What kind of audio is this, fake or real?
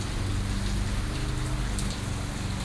real